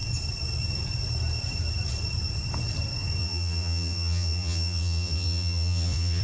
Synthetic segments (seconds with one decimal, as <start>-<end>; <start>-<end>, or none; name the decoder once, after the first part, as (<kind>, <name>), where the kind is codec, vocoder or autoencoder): 3.2-6.2 (vocoder, Vocos)